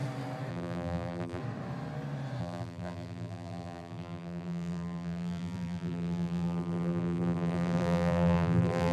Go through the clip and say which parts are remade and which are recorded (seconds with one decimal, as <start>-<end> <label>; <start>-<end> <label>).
0.0-0.5 recorded; 0.5-1.4 remade; 1.4-2.4 recorded; 2.4-8.9 remade